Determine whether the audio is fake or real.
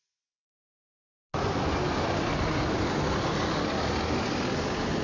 real